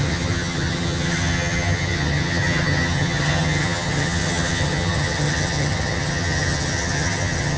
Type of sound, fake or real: fake